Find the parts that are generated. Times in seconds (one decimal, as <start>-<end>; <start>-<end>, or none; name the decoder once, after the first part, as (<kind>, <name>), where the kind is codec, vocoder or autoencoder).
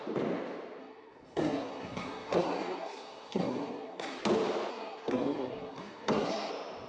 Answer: 0.8-4.2 (codec, SNAC); 4.7-6.5